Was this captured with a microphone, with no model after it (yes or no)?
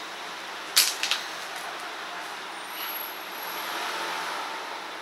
no